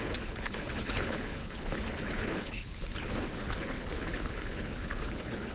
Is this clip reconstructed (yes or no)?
yes